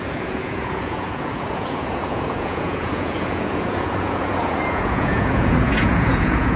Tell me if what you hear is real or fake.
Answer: fake